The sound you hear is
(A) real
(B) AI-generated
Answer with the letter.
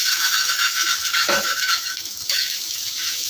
B